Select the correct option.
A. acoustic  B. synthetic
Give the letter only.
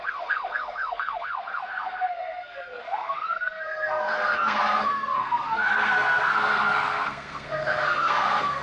B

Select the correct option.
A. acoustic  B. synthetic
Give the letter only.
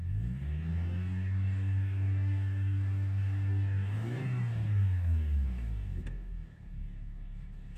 B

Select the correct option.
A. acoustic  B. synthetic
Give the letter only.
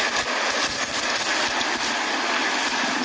A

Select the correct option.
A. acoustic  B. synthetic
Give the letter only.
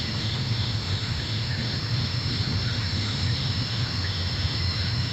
B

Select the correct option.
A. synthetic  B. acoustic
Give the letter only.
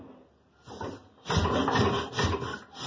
B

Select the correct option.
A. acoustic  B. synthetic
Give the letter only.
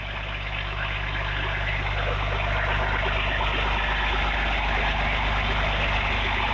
A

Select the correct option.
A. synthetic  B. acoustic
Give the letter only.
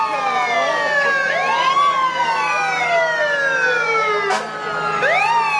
B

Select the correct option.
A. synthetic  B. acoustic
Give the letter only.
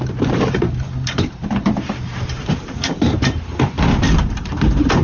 A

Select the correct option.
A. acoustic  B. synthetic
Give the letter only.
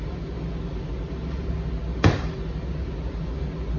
A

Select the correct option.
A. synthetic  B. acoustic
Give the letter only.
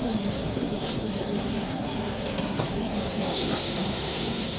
A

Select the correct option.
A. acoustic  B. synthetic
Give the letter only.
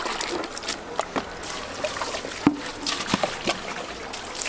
A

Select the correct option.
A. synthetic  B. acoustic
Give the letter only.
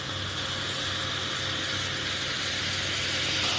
B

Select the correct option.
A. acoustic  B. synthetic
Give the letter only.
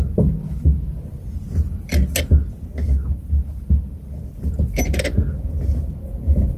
A